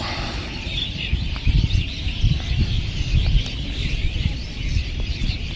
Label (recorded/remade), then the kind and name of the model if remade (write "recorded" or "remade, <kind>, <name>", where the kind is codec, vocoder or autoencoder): recorded